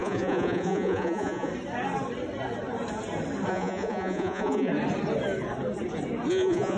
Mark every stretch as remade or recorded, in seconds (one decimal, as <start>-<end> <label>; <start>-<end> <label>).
0.0-1.5 remade; 1.5-3.5 recorded; 3.5-4.7 remade; 4.7-6.3 recorded; 6.3-6.8 remade